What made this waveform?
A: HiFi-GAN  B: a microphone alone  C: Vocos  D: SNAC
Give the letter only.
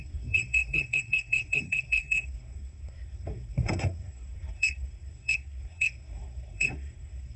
D